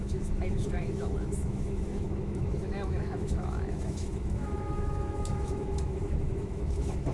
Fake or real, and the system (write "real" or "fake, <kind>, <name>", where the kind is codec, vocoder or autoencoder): fake, autoencoder, DAC-VAE